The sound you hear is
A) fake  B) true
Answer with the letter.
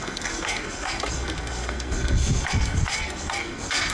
A